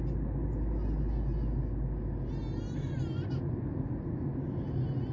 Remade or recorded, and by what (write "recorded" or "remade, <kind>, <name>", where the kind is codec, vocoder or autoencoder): recorded